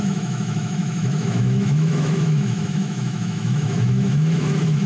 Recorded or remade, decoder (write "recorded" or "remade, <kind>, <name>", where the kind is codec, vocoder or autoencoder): remade, autoencoder, DAC-VAE